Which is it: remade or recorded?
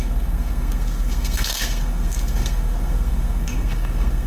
remade